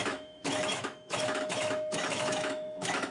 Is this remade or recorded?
remade